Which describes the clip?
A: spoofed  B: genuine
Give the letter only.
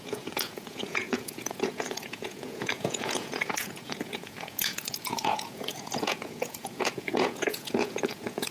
A